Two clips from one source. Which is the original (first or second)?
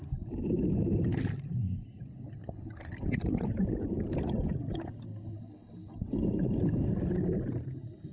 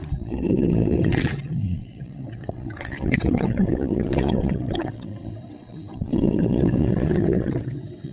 first